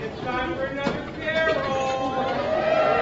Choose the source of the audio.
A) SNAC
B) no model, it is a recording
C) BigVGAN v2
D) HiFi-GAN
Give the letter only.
B